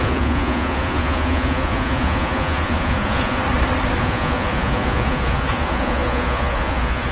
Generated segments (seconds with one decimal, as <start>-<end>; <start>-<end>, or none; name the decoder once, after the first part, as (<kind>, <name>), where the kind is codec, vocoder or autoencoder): 0.0-3.4 (vocoder, Vocos); 4.0-7.1